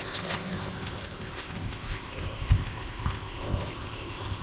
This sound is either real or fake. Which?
fake